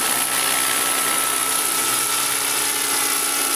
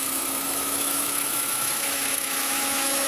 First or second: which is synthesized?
second